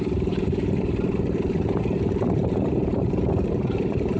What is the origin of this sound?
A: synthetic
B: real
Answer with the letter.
A